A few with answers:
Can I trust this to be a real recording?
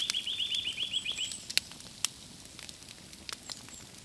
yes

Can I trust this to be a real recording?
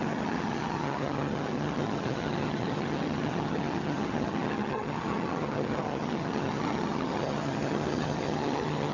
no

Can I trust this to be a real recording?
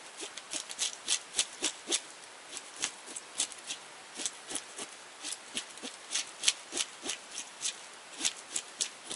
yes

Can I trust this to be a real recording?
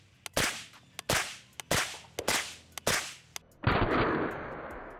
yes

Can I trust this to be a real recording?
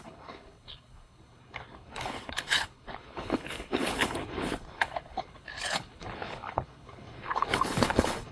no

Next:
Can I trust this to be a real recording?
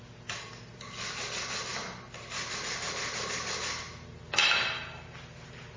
yes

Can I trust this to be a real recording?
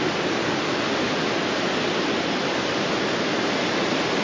yes